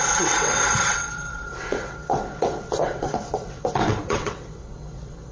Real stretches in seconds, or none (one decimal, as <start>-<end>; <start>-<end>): none